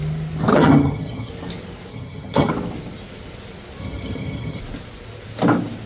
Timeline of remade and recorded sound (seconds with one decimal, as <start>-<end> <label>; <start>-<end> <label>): 0.0-0.5 recorded; 0.5-1.3 remade; 1.3-1.9 recorded; 1.9-2.5 remade; 2.5-3.8 recorded; 3.8-4.6 remade; 4.6-5.9 recorded